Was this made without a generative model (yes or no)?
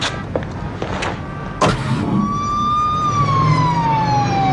yes